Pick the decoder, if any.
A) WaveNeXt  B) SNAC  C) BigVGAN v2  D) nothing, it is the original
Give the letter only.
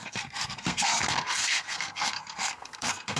B